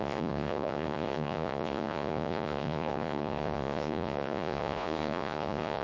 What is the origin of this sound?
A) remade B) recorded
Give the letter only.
A